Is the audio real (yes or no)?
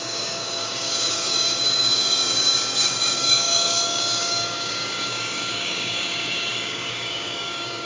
no